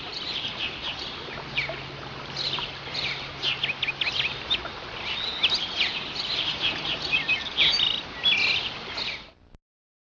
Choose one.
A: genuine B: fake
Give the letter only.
A